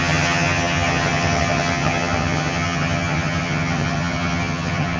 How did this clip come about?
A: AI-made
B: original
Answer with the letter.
A